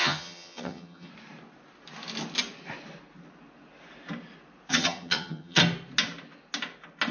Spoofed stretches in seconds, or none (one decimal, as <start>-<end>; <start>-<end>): 0.0-1.1; 4.7-5.6